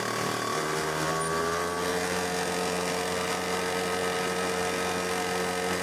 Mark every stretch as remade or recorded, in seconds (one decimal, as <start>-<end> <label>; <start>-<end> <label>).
0.0-5.8 recorded